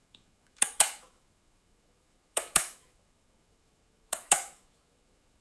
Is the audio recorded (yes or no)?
no